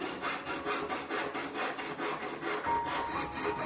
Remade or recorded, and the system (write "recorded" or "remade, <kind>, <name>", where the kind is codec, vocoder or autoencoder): recorded